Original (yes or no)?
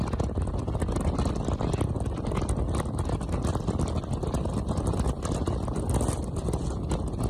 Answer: yes